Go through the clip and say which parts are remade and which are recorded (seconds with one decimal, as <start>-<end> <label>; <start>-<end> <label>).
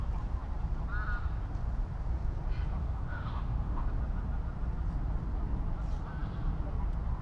0.0-2.8 recorded; 2.8-3.9 remade; 3.9-7.2 recorded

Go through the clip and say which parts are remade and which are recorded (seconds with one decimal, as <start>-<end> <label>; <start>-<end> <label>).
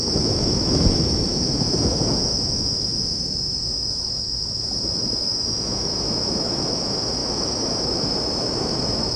0.0-9.2 remade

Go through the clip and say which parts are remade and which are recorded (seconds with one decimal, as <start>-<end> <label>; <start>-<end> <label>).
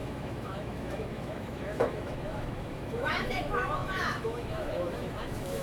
0.0-5.6 remade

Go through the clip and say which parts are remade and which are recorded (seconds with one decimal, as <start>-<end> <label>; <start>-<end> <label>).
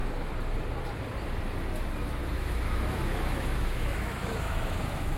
0.0-2.2 recorded; 2.2-5.2 remade